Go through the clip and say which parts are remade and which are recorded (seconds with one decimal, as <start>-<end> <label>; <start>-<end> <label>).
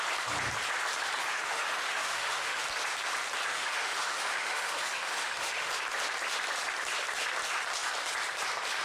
0.0-1.2 recorded; 1.2-2.6 remade; 2.6-3.5 recorded; 3.5-5.7 remade; 5.7-8.8 recorded